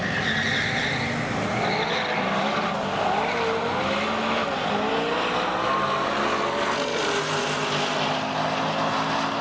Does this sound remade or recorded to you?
recorded